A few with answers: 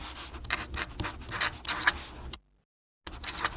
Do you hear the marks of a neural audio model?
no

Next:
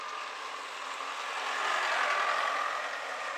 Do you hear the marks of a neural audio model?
no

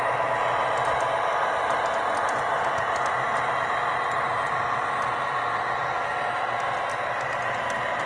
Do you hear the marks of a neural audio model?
no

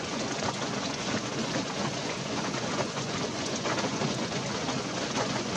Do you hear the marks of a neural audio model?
yes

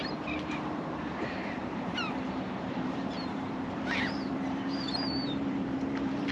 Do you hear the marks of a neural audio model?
yes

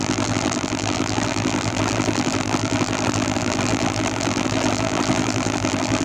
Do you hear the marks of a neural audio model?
yes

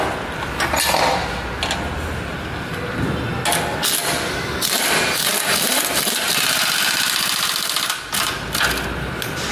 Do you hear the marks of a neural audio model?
no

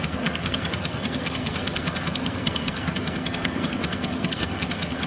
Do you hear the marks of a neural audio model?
yes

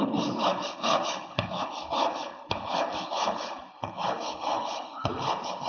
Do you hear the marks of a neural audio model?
yes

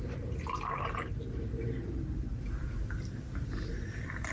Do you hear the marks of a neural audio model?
no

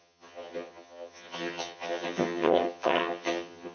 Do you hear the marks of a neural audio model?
yes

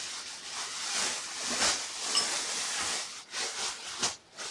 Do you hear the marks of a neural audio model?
no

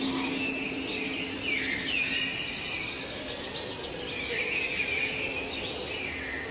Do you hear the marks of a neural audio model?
no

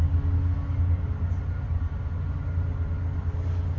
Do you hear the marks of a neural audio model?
no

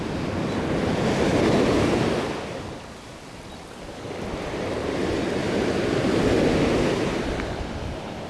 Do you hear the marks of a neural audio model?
no